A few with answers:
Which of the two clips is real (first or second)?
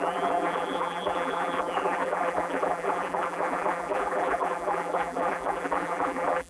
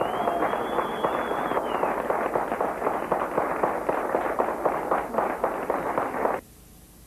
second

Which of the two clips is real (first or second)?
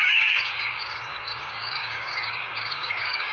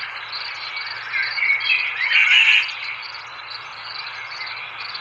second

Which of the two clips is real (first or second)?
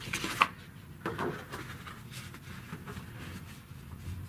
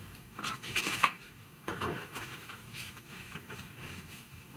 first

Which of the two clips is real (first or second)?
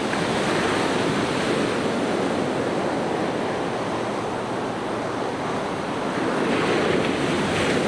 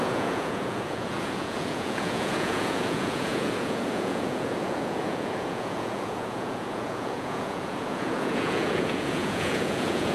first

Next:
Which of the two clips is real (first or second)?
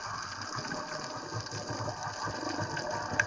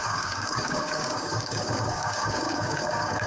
first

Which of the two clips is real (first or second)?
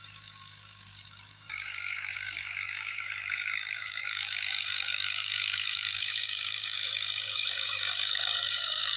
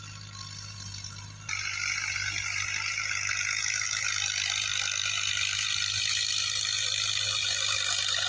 second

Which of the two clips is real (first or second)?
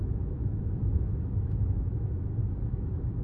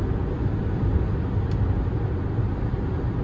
second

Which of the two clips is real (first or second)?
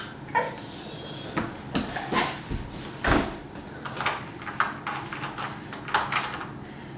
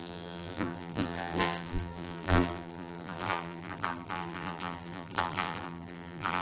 first